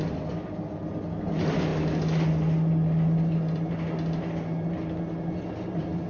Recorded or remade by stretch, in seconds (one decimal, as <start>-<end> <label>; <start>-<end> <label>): 0.0-6.1 recorded